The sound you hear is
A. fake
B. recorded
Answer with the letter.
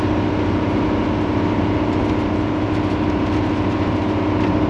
B